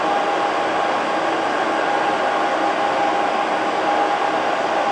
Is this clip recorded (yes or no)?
yes